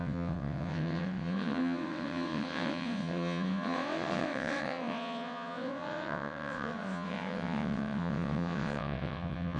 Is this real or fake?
fake